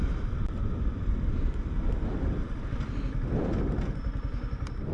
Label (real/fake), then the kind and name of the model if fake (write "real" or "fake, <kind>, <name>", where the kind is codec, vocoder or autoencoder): real